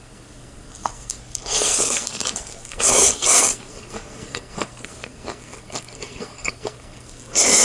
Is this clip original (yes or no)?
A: no